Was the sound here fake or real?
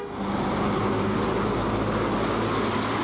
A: real